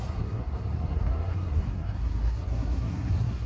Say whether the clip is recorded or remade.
remade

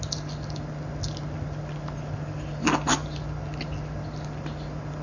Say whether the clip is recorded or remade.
recorded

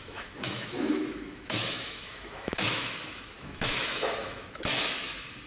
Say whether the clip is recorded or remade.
remade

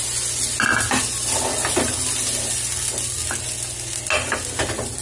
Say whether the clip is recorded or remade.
recorded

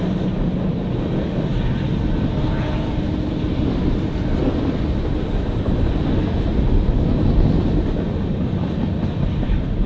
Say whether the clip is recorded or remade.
recorded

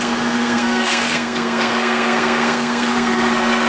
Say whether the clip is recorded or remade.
remade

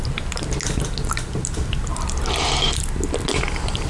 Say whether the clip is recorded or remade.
recorded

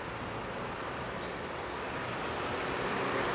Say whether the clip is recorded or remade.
recorded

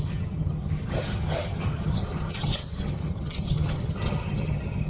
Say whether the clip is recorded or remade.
remade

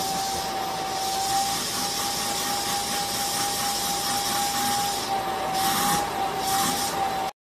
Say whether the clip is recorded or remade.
recorded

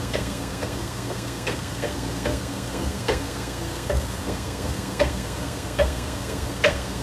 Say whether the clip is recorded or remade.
remade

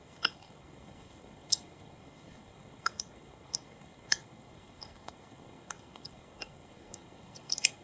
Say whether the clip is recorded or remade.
remade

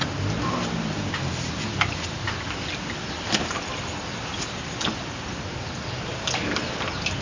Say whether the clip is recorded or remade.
recorded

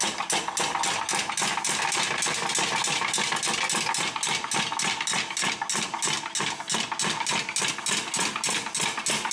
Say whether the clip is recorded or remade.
recorded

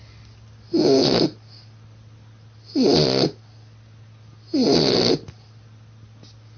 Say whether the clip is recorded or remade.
recorded